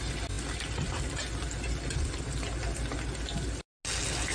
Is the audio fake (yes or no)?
no